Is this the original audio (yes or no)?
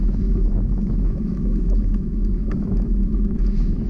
no